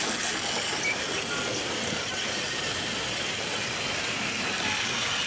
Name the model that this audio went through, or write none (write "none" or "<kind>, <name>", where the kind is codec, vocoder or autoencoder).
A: none